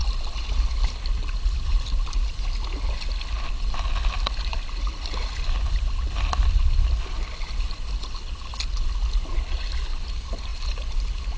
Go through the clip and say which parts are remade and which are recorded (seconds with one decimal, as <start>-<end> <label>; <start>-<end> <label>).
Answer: 0.0-10.5 recorded; 10.5-11.0 remade; 11.0-11.4 recorded